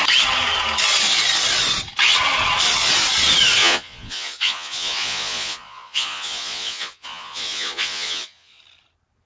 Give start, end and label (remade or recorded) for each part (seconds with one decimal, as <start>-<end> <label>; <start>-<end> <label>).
0.0-3.6 recorded; 3.6-8.6 remade; 8.6-9.3 recorded